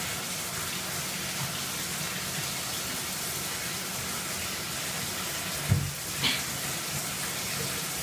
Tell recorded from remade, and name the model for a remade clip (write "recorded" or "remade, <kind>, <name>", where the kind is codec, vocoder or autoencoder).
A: recorded